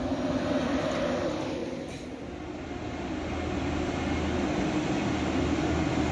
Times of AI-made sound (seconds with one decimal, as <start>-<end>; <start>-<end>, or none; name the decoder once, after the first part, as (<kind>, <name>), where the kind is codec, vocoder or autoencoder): none